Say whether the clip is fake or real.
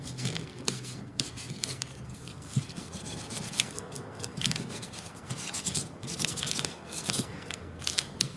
fake